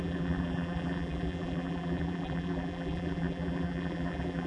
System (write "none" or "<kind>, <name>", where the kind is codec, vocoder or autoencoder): vocoder, BigVGAN v2